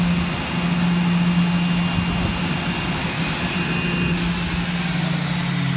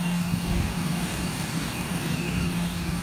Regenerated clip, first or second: second